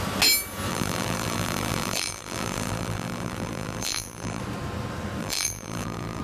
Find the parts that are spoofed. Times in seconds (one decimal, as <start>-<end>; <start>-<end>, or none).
0.7-4.4; 5.2-6.2